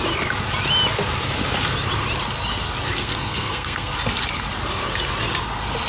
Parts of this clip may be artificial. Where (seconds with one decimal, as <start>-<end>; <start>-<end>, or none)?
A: 3.0-3.9